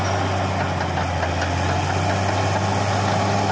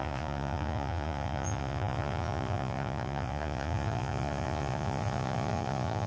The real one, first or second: first